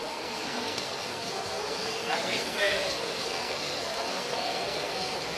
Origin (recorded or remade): remade